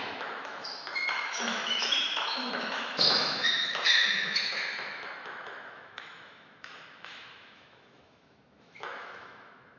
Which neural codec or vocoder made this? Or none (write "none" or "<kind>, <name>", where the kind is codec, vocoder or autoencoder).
autoencoder, DAC-VAE